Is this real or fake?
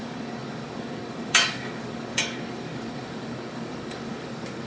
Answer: fake